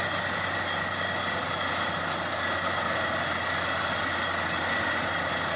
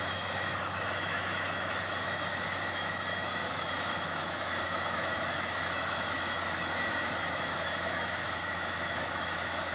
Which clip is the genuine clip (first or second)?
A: first